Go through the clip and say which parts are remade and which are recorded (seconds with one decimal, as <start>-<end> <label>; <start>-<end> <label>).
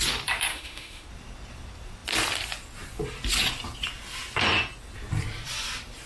0.0-0.5 recorded; 0.5-1.1 remade; 1.1-6.1 recorded